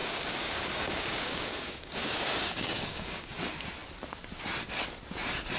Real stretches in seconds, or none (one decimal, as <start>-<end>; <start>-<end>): 3.4-5.6